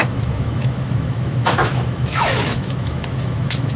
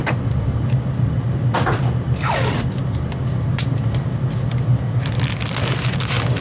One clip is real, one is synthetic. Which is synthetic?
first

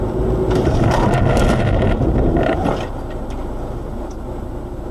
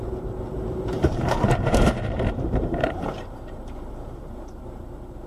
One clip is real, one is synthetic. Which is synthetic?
second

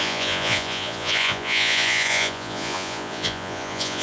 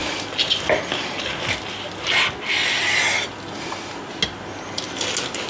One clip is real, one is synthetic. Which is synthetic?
first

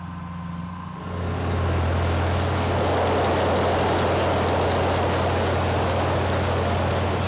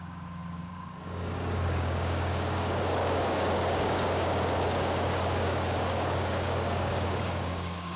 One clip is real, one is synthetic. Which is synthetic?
second